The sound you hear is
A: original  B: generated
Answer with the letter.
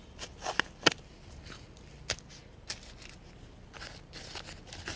A